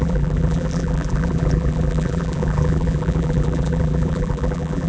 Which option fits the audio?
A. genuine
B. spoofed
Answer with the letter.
B